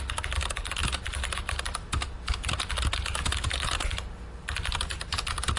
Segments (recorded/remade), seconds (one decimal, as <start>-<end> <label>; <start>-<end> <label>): 0.0-5.6 recorded